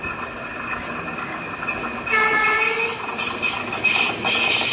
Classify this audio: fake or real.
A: real